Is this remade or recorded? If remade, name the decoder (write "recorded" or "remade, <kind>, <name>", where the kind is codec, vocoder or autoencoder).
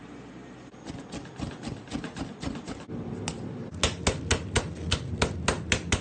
recorded